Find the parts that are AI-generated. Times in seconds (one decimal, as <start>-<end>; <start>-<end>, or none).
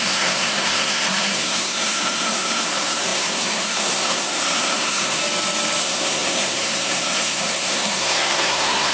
0.0-5.2; 5.8-8.9